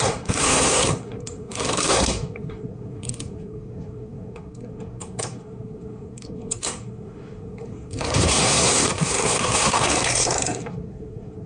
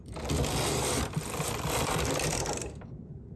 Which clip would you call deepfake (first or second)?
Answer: first